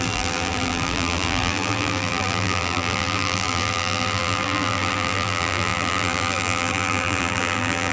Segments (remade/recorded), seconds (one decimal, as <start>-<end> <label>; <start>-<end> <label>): 0.0-7.9 remade

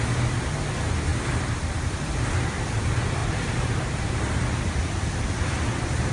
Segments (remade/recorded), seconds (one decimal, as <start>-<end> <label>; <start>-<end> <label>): 0.0-1.1 recorded; 1.1-2.1 remade; 2.1-3.2 recorded; 3.2-4.1 remade; 4.1-6.1 recorded